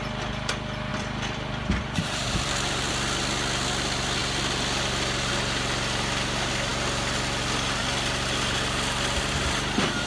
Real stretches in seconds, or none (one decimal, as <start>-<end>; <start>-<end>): 0.0-0.9; 2.9-10.1